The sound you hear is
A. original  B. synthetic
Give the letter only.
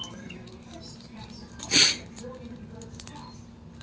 A